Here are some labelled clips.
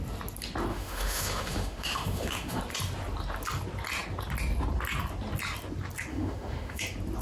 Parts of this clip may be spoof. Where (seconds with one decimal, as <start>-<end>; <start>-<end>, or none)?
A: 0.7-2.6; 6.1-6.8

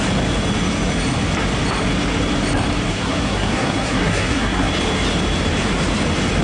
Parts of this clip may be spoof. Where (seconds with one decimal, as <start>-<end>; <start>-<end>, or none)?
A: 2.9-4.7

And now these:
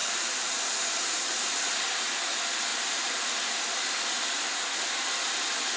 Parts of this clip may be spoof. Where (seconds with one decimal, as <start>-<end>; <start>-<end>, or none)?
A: 0.0-1.6; 2.7-4.2

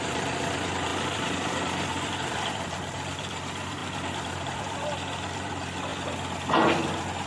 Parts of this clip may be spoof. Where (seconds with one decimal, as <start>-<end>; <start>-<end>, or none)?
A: 0.0-5.9

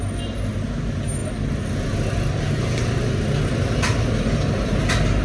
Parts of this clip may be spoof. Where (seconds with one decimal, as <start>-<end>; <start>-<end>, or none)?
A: none